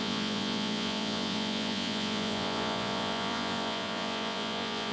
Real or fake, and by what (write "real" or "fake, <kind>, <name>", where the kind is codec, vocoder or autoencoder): fake, vocoder, Vocos